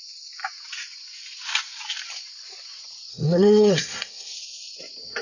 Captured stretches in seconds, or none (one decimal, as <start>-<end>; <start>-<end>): 0.0-3.1; 4.3-5.2